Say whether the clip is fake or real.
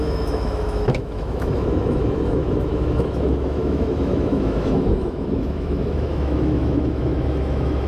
fake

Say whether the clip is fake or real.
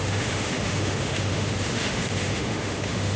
fake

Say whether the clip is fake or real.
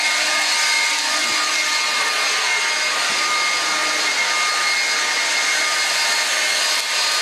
real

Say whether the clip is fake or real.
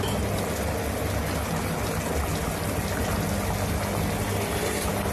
real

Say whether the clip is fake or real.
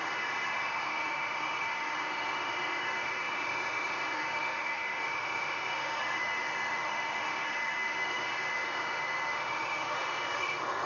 fake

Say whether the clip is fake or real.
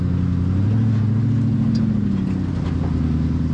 real